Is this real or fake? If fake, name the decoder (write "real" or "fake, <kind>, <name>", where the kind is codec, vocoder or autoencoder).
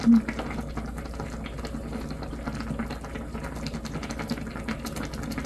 real